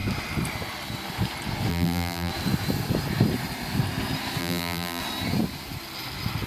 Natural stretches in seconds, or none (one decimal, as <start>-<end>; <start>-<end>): 0.0-1.7; 2.3-4.4; 5.0-6.5